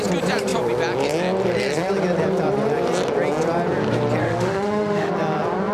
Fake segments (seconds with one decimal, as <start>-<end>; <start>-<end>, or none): 4.2-5.1